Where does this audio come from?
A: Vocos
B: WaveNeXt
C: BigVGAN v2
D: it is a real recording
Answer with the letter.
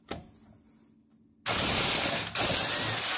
D